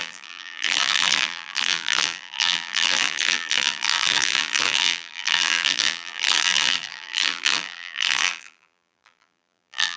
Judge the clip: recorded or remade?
remade